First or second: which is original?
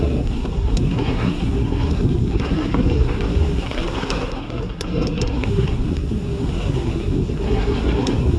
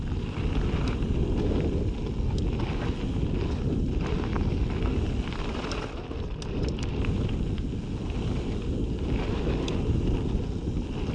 second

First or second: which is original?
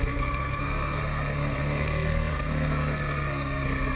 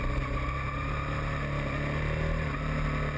second